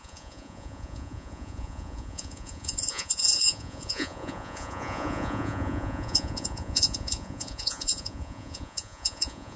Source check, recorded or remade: remade